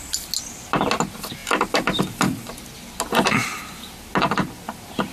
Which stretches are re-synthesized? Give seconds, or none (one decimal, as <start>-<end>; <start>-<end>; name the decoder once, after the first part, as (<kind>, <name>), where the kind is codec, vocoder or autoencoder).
none